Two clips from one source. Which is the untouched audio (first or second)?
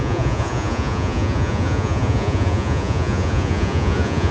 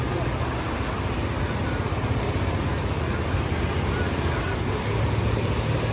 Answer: second